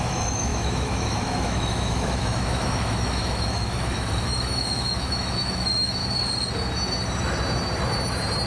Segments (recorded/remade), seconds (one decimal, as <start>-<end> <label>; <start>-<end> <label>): 0.0-6.0 remade; 6.0-8.5 recorded